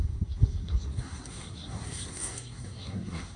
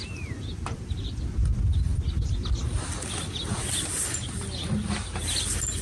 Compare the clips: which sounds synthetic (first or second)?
first